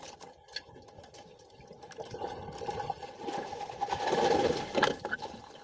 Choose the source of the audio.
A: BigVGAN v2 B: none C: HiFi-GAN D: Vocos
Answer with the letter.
B